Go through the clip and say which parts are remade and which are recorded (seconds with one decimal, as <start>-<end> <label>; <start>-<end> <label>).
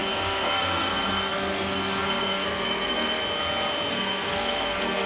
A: 0.0-3.2 remade; 3.2-3.9 recorded; 3.9-5.1 remade